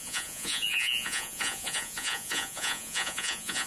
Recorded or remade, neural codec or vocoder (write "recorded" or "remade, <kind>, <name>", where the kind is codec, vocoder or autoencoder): remade, vocoder, Vocos